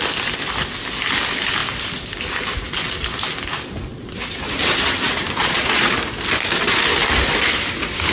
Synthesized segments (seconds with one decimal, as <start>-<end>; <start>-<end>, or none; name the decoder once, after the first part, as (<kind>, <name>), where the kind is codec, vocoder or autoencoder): 5.4-5.9 (vocoder, Vocos)